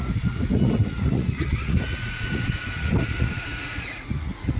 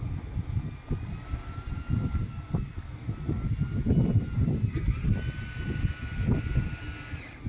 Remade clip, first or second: first